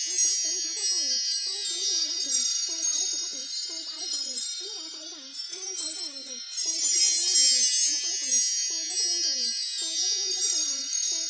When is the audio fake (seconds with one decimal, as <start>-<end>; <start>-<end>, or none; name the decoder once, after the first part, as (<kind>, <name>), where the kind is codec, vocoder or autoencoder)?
2.0-7.0 (vocoder, Vocos); 10.3-10.9